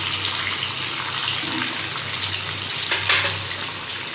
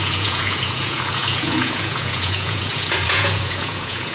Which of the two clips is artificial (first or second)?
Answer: second